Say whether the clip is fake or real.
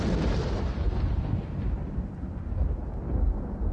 real